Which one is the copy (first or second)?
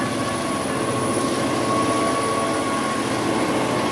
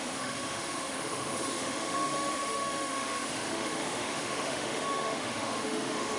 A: second